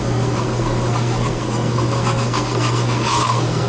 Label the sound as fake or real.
fake